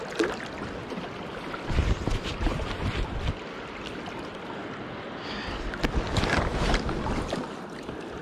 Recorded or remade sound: recorded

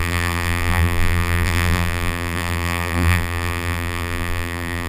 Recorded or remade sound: remade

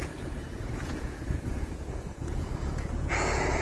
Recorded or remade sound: remade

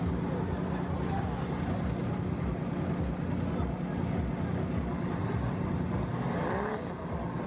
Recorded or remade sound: recorded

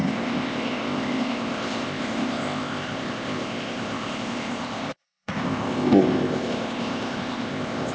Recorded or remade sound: remade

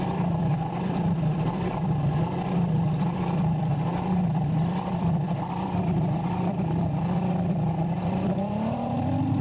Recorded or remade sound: remade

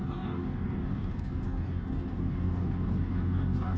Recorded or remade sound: remade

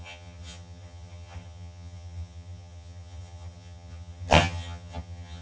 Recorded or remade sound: remade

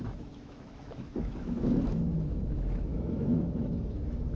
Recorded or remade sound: remade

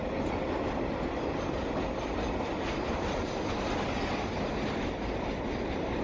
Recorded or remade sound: recorded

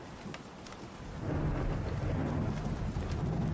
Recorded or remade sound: recorded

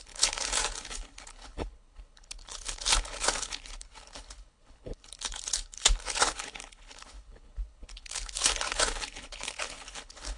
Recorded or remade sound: remade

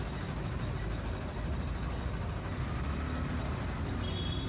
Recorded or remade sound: recorded